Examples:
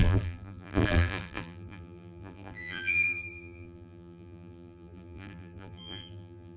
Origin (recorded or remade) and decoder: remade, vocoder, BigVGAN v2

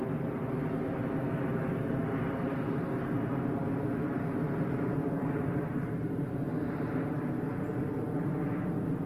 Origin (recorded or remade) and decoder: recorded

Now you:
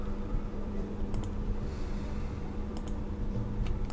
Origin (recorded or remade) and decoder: remade, vocoder, BigVGAN v2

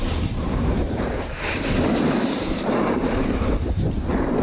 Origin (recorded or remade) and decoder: remade, vocoder, BigVGAN v2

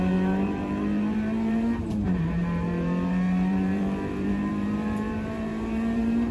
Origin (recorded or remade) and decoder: remade, vocoder, BigVGAN v2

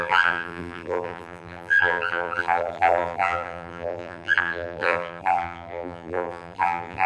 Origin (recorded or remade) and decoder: remade, vocoder, BigVGAN v2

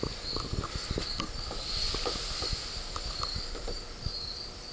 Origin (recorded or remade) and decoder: recorded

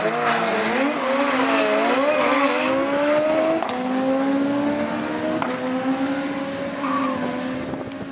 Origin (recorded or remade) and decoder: recorded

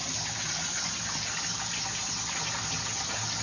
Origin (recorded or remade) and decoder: recorded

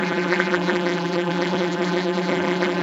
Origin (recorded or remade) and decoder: remade, vocoder, BigVGAN v2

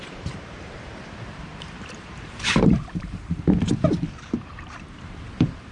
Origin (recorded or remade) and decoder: remade, vocoder, BigVGAN v2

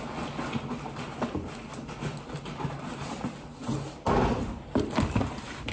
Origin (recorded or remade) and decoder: recorded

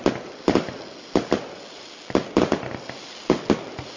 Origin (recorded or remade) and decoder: recorded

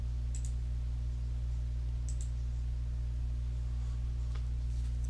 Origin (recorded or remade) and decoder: recorded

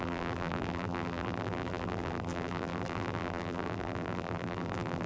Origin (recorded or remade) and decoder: remade, vocoder, BigVGAN v2